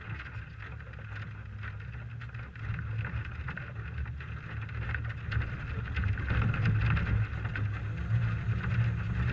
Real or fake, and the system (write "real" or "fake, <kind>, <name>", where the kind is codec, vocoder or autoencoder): real